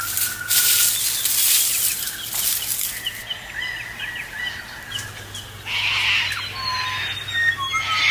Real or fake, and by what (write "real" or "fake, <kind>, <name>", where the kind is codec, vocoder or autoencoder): real